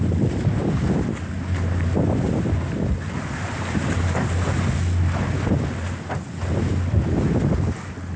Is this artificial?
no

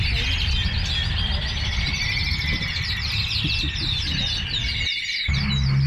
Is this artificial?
no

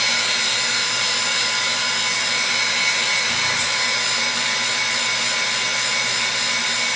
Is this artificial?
no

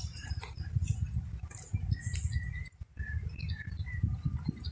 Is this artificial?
no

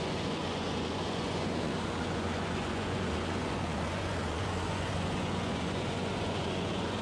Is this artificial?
yes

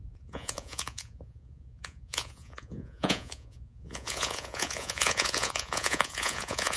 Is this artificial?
yes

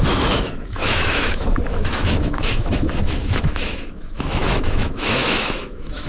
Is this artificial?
yes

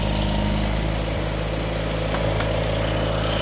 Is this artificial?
no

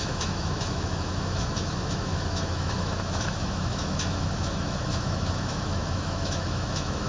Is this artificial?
yes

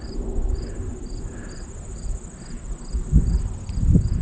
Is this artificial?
yes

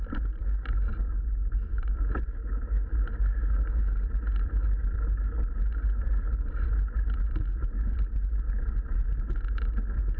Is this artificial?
no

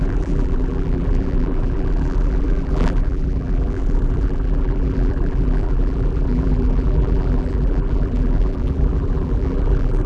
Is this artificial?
yes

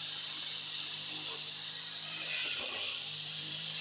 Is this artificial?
yes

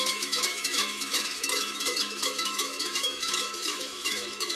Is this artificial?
yes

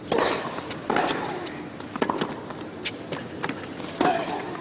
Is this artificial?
no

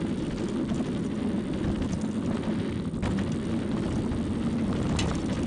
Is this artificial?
no